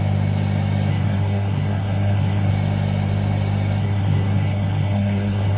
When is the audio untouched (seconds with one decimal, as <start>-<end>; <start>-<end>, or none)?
0.0-0.9; 2.5-3.8